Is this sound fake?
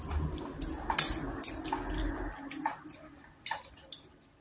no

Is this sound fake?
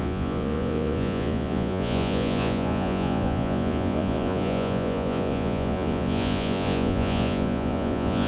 yes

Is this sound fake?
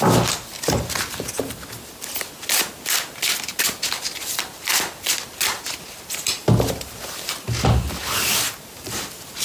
no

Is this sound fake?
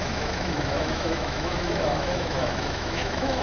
yes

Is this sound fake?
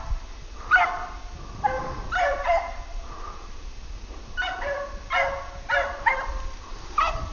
no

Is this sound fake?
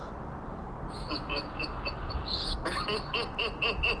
no